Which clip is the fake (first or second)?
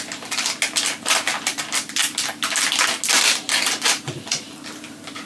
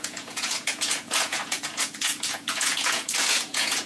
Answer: second